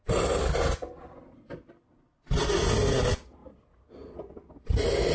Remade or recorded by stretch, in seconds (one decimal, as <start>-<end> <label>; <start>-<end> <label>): 0.0-5.1 recorded